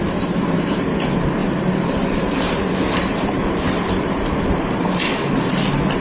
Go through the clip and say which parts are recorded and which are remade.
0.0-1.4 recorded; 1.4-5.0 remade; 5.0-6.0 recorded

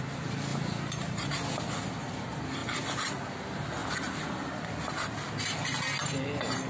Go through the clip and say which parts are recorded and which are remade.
0.0-0.5 recorded; 0.5-1.3 remade; 1.3-3.8 recorded; 3.8-4.5 remade; 4.5-6.7 recorded

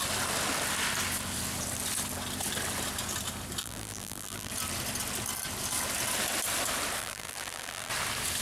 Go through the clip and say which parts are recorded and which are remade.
0.0-3.6 recorded; 3.6-4.5 remade; 4.5-7.0 recorded; 7.0-7.9 remade; 7.9-8.4 recorded

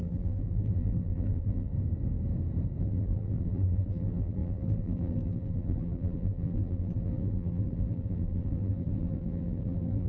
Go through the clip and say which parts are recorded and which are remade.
0.0-1.7 remade; 1.7-2.8 recorded; 2.8-10.1 remade

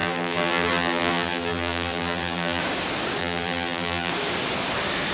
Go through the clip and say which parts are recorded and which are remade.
0.0-2.6 remade; 2.6-3.2 recorded; 3.2-4.1 remade; 4.1-5.1 recorded

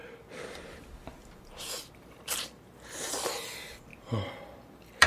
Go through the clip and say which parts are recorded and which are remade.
0.0-3.1 remade; 3.1-3.9 recorded; 3.9-5.1 remade